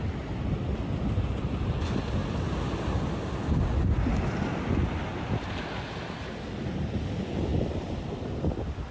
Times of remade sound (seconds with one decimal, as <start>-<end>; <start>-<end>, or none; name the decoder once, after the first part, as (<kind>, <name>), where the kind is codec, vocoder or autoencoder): 5.1-5.7 (vocoder, BigVGAN v2); 7.5-8.4